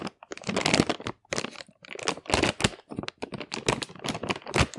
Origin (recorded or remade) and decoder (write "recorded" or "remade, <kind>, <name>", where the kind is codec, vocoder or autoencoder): recorded